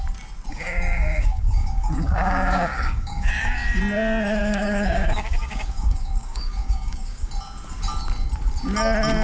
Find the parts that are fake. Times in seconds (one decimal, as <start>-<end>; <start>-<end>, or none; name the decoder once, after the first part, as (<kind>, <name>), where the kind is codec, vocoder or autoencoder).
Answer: 0.5-3.8 (codec, DAC); 4.4-7.3